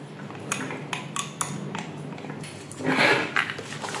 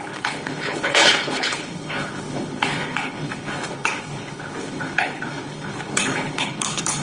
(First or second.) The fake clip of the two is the second